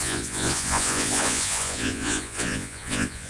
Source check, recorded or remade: remade